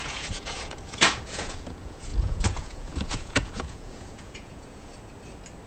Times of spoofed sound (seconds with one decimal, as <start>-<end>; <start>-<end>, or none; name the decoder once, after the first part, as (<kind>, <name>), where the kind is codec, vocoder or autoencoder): 0.0-4.9 (vocoder, Vocos)